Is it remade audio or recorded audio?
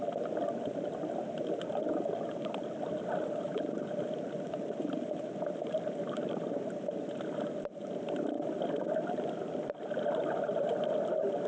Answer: recorded